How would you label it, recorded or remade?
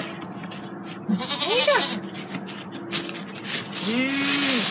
recorded